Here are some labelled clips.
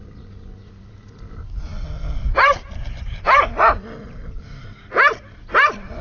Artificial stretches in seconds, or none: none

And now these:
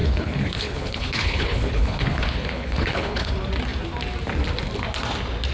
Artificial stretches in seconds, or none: 0.0-3.3 (codec, HILCodec)

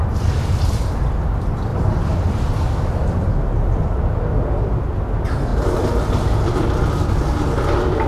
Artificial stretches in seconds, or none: 1.7-3.3 (vocoder, BigVGAN v2); 5.5-6.5

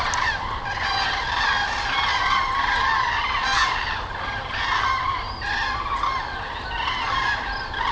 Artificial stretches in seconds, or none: 2.1-4.2 (vocoder, BigVGAN v2)

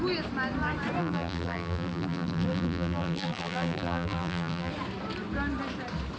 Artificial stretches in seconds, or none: 1.0-4.7 (vocoder, BigVGAN v2)

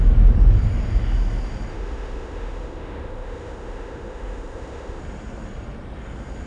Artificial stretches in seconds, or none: 1.7-5.0 (autoencoder, DAC-VAE)

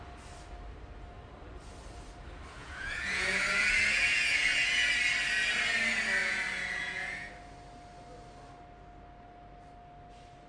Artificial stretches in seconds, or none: 2.6-4.9 (vocoder, Vocos); 6.2-7.3

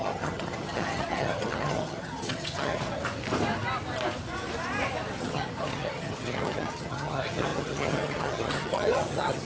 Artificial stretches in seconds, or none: 0.0-3.0 (vocoder, HiFi-GAN); 5.2-9.4